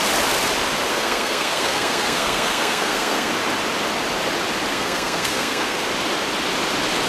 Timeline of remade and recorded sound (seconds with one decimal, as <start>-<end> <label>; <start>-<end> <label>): 0.0-0.9 recorded; 0.9-3.3 remade; 3.3-4.7 recorded; 4.7-5.9 remade; 5.9-7.1 recorded